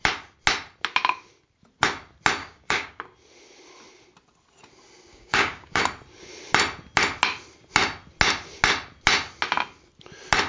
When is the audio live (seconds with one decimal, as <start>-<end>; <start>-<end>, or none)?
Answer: 0.0-2.4; 3.0-5.1; 5.8-10.5